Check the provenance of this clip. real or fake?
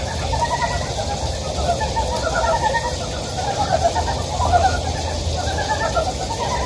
real